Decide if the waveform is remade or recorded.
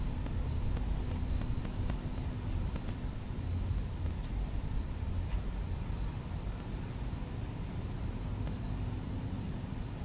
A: recorded